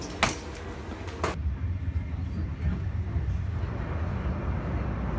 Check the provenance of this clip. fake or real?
real